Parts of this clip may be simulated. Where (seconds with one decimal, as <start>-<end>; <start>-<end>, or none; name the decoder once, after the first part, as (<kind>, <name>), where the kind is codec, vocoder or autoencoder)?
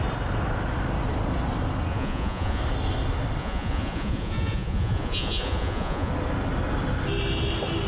1.9-2.6 (vocoder, Vocos); 3.4-6.1